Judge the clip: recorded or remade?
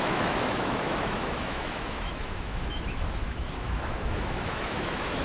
remade